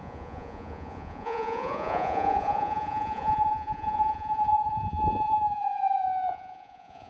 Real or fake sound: fake